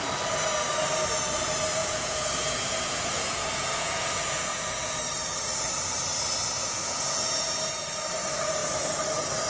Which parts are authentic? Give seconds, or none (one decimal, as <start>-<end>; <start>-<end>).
0.0-1.8; 5.0-6.6; 7.6-9.5